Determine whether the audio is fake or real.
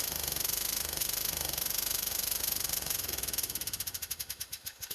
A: fake